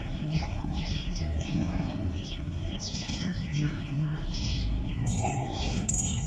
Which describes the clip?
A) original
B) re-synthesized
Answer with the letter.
B